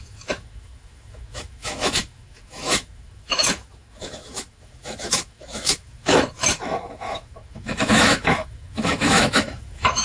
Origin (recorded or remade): remade